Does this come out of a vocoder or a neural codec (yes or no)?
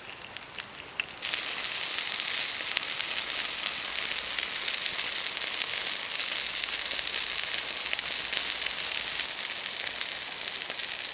no